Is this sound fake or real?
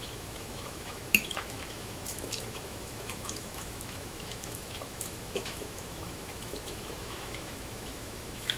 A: fake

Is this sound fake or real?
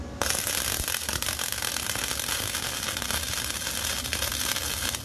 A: real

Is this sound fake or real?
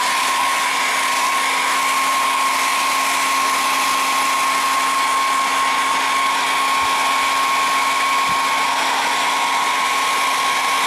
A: real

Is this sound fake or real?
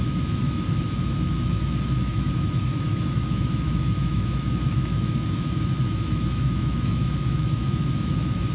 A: fake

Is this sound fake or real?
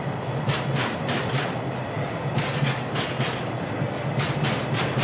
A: real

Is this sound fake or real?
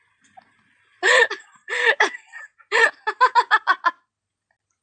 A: real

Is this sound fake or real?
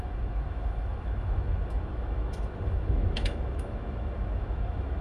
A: fake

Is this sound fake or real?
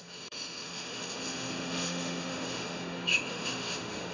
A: fake